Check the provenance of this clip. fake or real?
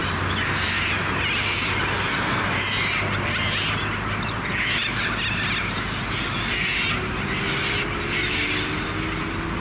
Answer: real